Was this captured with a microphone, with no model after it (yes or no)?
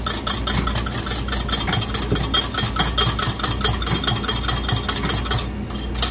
yes